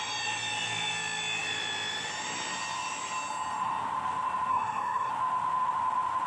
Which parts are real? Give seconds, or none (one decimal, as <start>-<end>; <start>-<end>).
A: 0.0-4.5; 5.1-6.3